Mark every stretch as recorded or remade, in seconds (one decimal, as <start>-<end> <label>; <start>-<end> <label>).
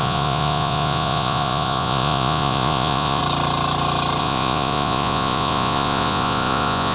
0.0-3.2 remade; 3.2-4.2 recorded; 4.2-6.9 remade